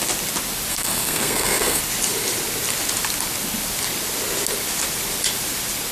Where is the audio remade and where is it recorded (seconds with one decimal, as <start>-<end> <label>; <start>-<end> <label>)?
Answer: 0.0-0.7 recorded; 0.7-1.8 remade; 1.8-5.9 recorded